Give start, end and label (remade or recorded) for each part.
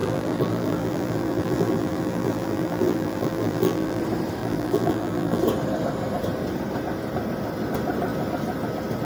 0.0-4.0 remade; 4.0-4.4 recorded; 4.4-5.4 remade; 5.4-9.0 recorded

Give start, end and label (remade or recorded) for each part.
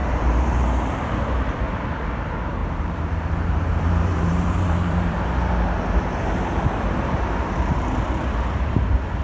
0.0-1.6 remade; 1.6-2.6 recorded; 2.6-5.2 remade; 5.2-9.2 recorded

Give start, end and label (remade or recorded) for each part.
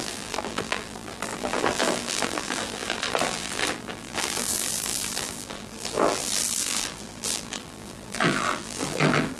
0.0-9.4 remade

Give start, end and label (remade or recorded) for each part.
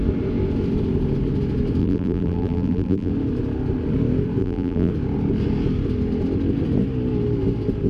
0.0-1.8 recorded; 1.8-3.1 remade; 3.1-4.4 recorded; 4.4-4.9 remade; 4.9-7.9 recorded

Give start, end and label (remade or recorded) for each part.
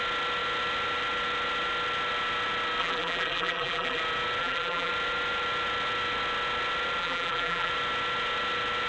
0.0-2.8 recorded; 2.8-4.0 remade; 4.0-4.4 recorded; 4.4-4.9 remade; 4.9-7.0 recorded; 7.0-7.7 remade; 7.7-8.9 recorded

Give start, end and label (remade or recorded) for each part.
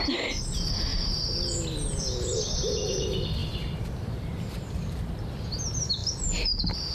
0.0-0.9 recorded; 0.9-1.4 remade; 1.4-3.4 recorded; 3.4-5.2 remade; 5.2-6.9 recorded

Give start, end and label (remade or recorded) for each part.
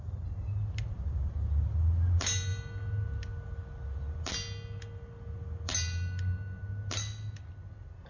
0.0-8.1 recorded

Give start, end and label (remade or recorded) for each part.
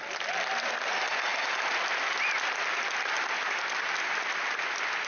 0.0-5.1 recorded